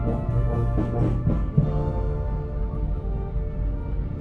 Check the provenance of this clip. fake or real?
real